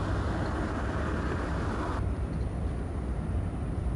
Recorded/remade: recorded